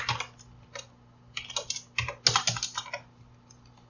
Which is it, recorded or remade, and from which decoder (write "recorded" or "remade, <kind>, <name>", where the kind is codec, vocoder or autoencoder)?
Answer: recorded